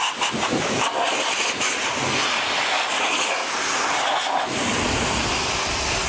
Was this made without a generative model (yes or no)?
yes